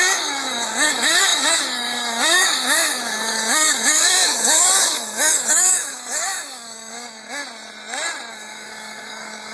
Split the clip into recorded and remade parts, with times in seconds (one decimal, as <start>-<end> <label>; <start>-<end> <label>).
0.0-7.4 remade; 7.4-8.3 recorded; 8.3-9.5 remade